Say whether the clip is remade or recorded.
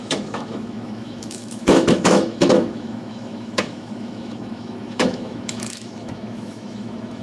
remade